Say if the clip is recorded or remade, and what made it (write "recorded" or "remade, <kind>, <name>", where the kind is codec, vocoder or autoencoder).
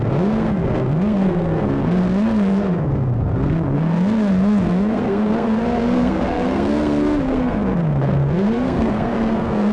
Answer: remade, codec, SNAC